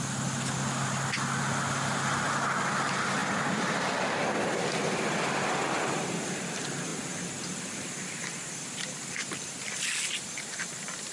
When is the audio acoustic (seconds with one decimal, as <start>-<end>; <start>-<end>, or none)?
0.0-11.1